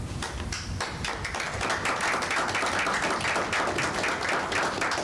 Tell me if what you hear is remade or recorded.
recorded